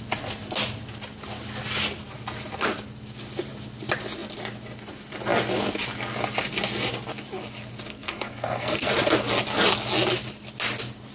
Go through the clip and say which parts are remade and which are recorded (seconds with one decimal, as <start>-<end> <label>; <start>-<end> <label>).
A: 0.0-7.9 recorded; 7.9-8.9 remade; 8.9-11.1 recorded